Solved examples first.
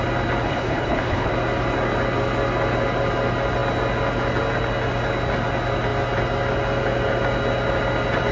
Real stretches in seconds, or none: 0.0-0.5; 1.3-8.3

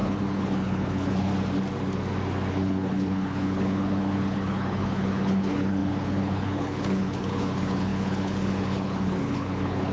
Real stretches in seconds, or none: 1.3-2.5

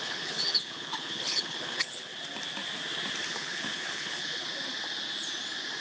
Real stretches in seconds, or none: 2.1-3.3; 4.5-5.8

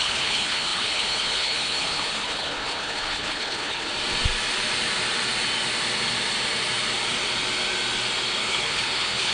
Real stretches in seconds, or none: 3.9-8.4

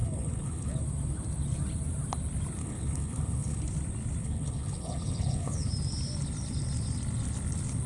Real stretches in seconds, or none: 0.8-2.6; 3.6-4.2; 5.7-7.9

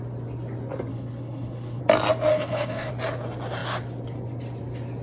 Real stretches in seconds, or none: 0.0-0.9; 1.8-2.3; 2.9-5.0

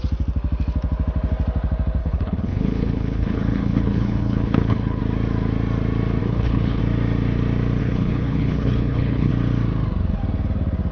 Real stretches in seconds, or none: 0.0-2.0; 5.0-6.2; 6.8-7.8; 9.3-10.9